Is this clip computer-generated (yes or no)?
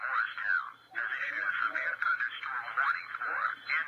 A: no